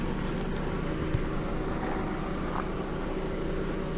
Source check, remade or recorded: recorded